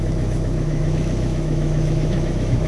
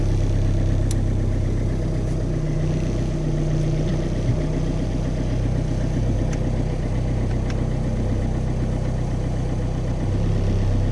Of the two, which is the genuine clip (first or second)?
second